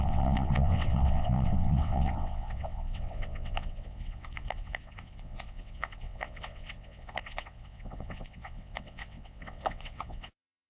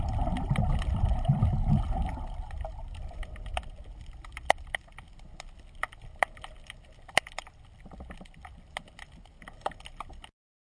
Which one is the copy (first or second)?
first